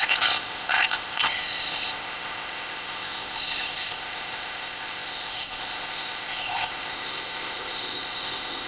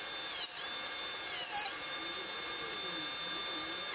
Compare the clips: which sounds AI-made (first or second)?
first